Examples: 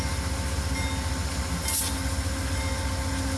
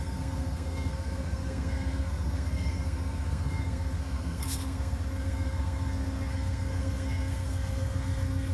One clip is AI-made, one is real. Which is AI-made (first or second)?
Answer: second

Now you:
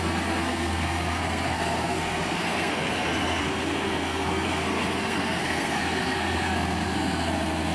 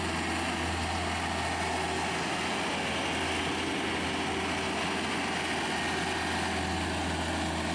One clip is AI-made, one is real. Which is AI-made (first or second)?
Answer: first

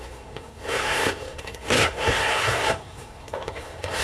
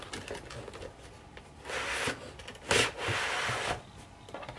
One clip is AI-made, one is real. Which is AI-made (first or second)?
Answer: first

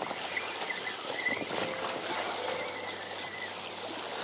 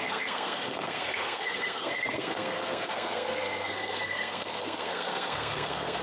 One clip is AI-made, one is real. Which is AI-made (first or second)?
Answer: second